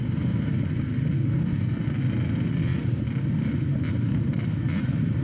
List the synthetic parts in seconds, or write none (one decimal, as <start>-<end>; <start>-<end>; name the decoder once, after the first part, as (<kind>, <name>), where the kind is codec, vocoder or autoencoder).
1.3-1.8 (codec, SNAC)